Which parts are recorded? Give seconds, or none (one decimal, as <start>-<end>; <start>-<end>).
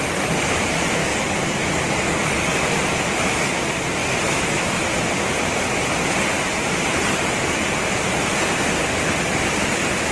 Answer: 0.0-1.0; 2.6-10.1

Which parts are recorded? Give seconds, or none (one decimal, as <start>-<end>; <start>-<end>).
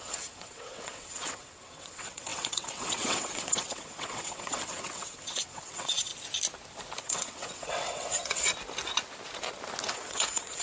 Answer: 6.1-7.0; 8.5-9.9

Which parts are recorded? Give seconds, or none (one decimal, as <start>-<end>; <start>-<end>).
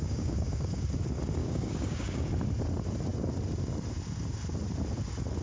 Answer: 0.8-1.4; 2.3-5.4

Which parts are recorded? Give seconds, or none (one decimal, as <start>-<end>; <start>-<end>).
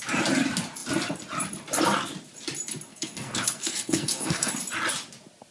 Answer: 0.0-2.9; 4.5-5.5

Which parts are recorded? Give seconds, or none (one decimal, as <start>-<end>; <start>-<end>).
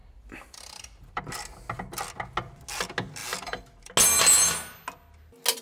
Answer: 1.2-3.2; 3.9-5.6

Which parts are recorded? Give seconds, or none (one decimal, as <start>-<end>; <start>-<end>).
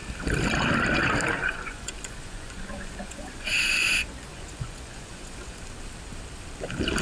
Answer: 0.0-1.4; 5.6-7.0